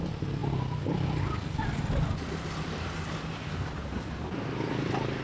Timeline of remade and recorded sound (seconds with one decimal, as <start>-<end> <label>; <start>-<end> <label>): 0.0-5.2 recorded